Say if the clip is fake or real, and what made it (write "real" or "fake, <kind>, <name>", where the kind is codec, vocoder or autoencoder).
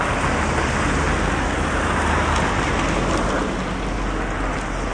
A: real